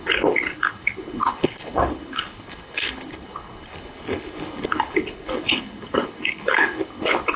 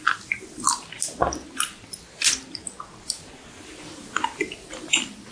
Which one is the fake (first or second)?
first